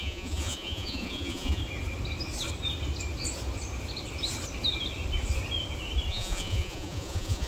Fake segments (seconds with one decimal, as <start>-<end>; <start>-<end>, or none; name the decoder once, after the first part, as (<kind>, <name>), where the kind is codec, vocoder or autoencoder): 0.0-1.6 (vocoder, Vocos); 6.1-7.5